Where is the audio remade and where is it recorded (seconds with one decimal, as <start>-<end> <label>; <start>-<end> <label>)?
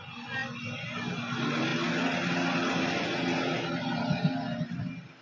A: 0.0-5.2 recorded